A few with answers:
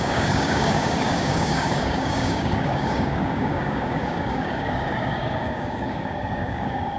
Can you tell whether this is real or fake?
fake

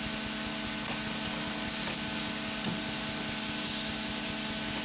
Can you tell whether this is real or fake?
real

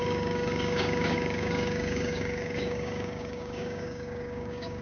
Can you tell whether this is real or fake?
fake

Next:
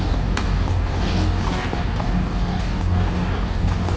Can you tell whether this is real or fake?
fake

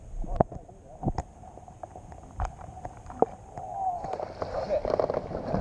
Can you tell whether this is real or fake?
real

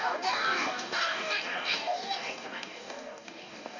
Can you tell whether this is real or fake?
fake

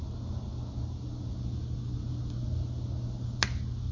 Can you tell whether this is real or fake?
real